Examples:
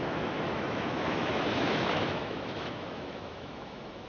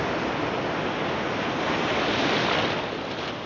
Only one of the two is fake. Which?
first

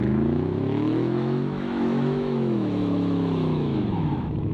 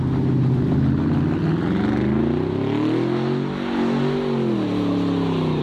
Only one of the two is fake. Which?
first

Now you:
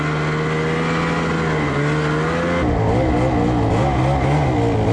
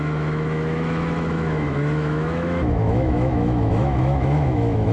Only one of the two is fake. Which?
second